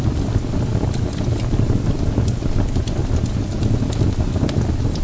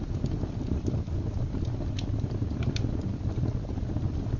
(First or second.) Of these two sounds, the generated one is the second